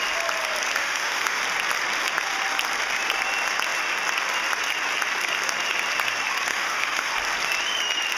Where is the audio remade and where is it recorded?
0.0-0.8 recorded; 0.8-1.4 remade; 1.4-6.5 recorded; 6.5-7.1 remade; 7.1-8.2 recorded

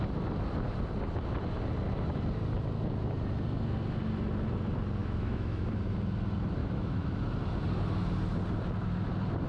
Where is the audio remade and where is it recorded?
0.0-5.0 recorded; 5.0-5.7 remade; 5.7-6.6 recorded; 6.6-7.2 remade; 7.2-9.5 recorded

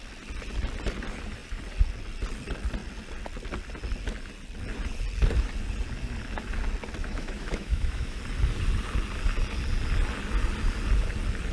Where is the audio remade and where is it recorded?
0.0-7.0 recorded; 7.0-8.2 remade; 8.2-11.5 recorded

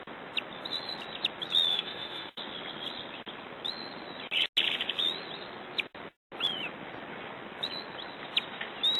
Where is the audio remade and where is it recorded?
0.0-1.7 recorded; 1.7-2.4 remade; 2.4-9.0 recorded

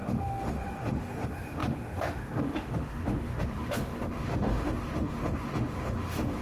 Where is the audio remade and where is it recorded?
0.0-6.4 remade

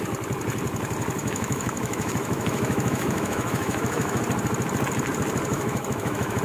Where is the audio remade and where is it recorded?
0.0-1.2 recorded; 1.2-4.2 remade; 4.2-5.5 recorded; 5.5-6.4 remade

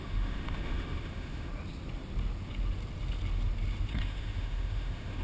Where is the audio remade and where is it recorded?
0.0-1.5 remade; 1.5-3.9 recorded; 3.9-5.2 remade

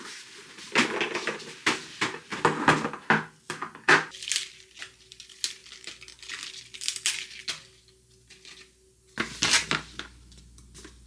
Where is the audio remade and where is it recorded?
0.0-11.1 recorded